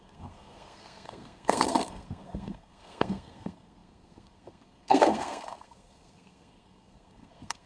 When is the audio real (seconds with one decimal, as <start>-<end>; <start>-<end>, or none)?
none

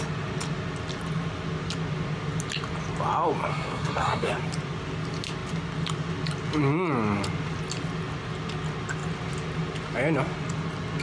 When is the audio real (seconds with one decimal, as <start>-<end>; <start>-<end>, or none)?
0.0-3.5; 4.3-11.0

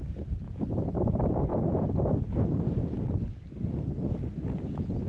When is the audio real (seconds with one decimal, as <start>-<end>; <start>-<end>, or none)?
0.0-5.1

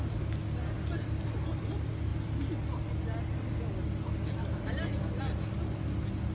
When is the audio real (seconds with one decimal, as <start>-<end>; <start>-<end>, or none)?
0.0-6.3